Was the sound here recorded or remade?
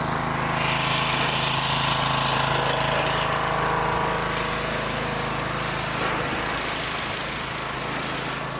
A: recorded